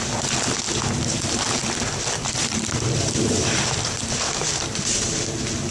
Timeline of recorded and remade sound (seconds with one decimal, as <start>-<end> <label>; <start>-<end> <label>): 0.0-1.6 recorded; 1.6-5.0 remade; 5.0-5.7 recorded